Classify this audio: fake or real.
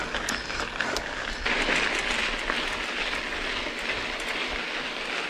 real